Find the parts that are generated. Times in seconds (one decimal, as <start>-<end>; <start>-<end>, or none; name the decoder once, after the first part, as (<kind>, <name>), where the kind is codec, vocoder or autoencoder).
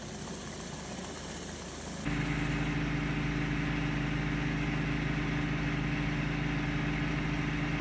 none